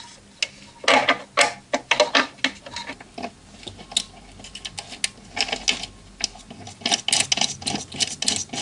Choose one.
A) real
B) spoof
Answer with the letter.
A